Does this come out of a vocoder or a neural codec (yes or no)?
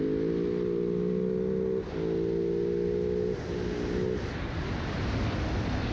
no